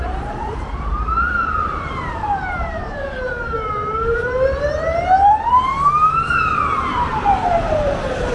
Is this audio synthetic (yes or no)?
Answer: yes